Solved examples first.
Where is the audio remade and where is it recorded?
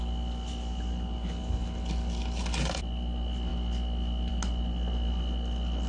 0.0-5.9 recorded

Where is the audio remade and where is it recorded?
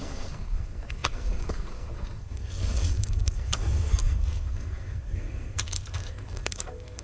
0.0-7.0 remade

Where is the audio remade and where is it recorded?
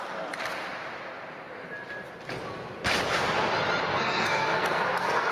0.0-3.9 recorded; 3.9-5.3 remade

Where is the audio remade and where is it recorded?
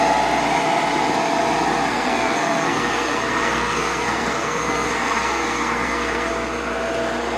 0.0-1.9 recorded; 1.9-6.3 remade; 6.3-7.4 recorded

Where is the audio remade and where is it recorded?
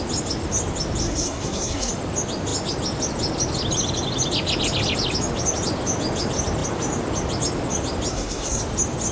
0.0-1.0 recorded; 1.0-1.9 remade; 1.9-8.1 recorded; 8.1-8.6 remade; 8.6-9.1 recorded